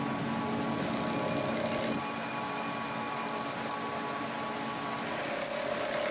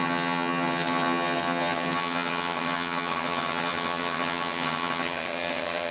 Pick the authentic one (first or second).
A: first